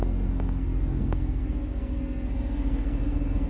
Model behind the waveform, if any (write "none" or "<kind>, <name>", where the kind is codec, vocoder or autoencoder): codec, SNAC